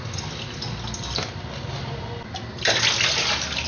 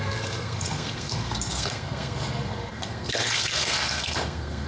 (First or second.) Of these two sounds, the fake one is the second